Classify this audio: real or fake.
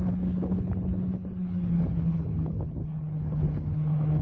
fake